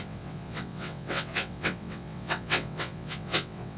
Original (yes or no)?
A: no